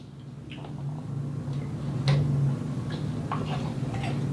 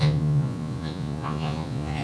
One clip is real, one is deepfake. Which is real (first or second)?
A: first